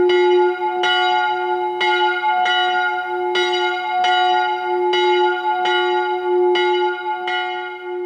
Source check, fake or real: real